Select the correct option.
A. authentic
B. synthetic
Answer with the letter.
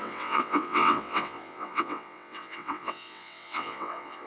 B